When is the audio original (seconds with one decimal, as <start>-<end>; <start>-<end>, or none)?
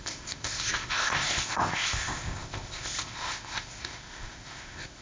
none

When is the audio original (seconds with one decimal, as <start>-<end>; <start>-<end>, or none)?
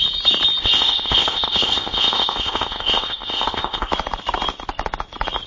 0.0-0.6; 3.9-5.5